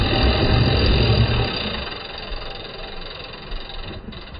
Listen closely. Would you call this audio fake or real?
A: real